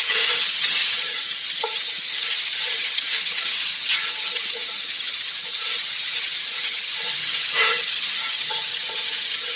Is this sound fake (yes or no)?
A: yes